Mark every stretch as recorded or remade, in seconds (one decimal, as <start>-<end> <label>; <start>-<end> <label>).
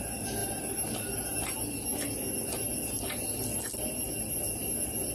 0.0-5.1 recorded